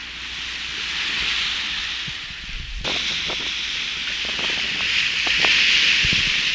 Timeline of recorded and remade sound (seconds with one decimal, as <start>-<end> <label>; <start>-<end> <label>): 0.0-6.5 recorded